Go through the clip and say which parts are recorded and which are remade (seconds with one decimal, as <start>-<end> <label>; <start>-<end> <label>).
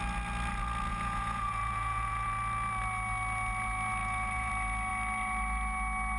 0.0-0.9 recorded; 0.9-2.3 remade; 2.3-4.0 recorded; 4.0-4.5 remade; 4.5-6.2 recorded